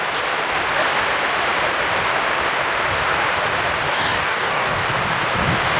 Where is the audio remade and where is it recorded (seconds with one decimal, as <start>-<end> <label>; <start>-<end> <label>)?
0.0-3.9 recorded; 3.9-4.8 remade; 4.8-5.8 recorded